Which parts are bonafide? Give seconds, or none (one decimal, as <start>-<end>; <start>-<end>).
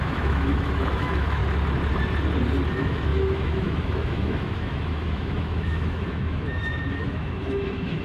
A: 1.4-2.7